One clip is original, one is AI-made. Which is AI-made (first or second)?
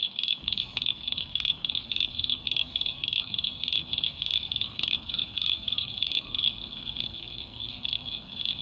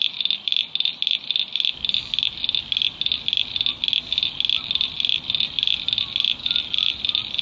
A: first